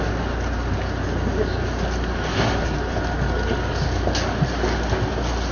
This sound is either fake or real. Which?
real